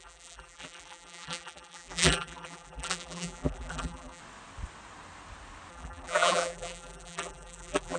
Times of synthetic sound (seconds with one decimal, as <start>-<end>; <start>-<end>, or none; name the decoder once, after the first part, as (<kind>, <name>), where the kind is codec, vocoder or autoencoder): 0.0-4.2 (vocoder, BigVGAN v2); 5.7-8.0